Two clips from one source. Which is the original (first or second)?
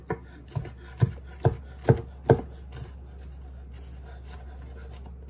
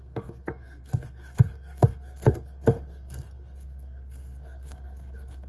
first